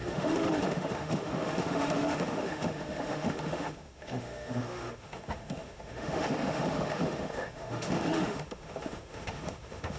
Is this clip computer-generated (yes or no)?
yes